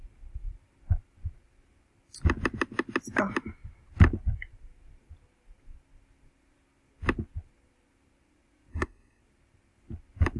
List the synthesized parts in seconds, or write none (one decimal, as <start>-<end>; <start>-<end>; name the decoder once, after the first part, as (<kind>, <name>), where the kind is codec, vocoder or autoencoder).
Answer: 8.7-9.2 (codec, SNAC)